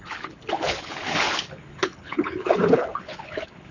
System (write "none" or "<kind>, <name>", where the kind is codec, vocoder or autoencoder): codec, HILCodec